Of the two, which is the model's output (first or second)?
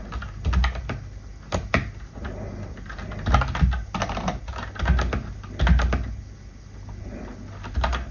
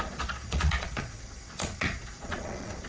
second